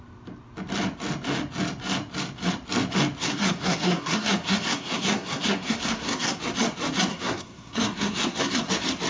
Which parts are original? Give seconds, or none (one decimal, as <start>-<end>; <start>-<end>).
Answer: 0.0-3.2; 6.4-7.1; 8.7-9.1

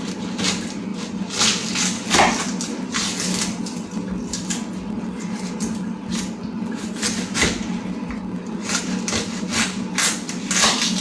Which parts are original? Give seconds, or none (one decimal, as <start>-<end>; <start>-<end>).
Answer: 0.0-11.0

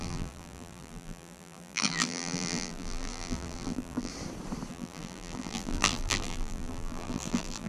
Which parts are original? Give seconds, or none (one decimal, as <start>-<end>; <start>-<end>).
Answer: 4.1-4.7

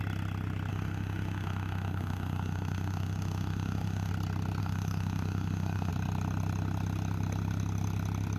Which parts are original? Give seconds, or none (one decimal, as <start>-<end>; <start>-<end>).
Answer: 0.0-0.7; 4.1-4.6; 5.9-8.4

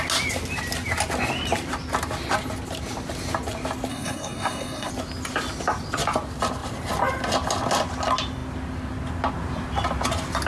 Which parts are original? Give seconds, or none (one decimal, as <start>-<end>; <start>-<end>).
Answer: 0.0-3.9; 4.9-10.5

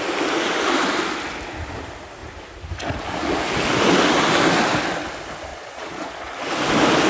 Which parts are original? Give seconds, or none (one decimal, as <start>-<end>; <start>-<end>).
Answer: 0.0-5.5; 6.2-7.1

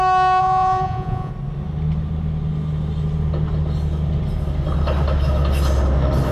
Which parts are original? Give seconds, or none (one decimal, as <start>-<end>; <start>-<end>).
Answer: 0.0-0.4; 1.3-6.3

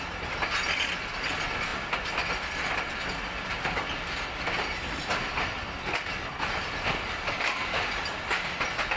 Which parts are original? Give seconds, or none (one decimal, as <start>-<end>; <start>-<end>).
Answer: 0.0-9.0